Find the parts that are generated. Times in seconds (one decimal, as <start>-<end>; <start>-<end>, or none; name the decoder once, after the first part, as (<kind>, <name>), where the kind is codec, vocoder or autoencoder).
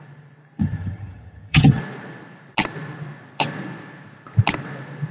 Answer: 0.6-1.8 (vocoder, HiFi-GAN)